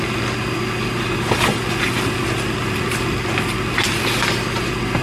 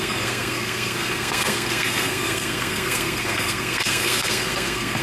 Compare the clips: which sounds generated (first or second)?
second